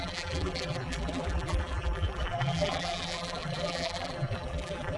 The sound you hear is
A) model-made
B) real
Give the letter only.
A